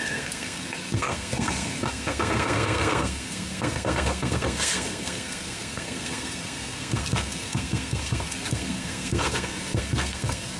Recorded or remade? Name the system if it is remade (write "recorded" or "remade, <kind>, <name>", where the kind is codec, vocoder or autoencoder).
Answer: remade, codec, SNAC